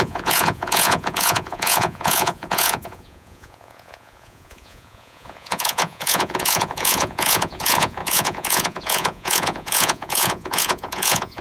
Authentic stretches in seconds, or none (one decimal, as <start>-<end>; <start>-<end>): none